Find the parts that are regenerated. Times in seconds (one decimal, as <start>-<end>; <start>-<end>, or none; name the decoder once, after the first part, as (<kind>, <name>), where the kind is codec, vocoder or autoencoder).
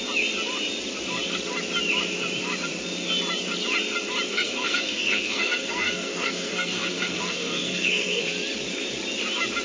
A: 4.3-8.2 (codec, SNAC)